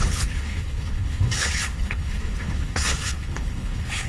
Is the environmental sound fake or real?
fake